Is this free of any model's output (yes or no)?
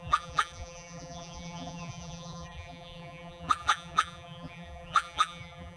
no